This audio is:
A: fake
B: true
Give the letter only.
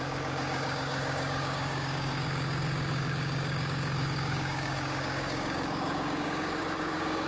A